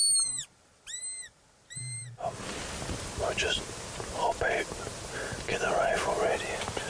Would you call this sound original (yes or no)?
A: yes